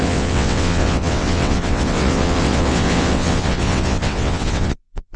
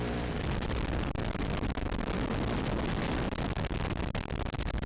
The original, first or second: second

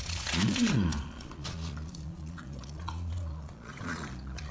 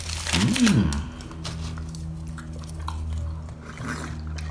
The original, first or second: second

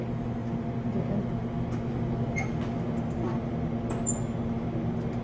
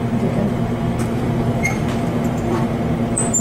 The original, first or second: first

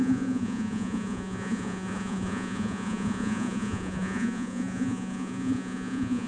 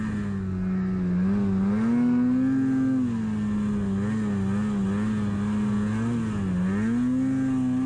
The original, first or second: second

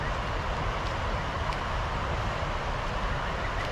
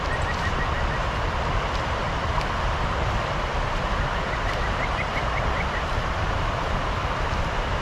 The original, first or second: first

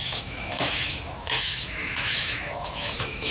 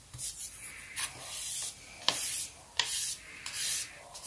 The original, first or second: second